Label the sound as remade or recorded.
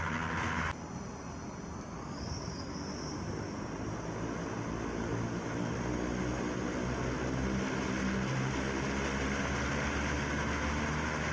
recorded